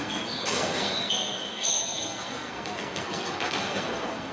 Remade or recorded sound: remade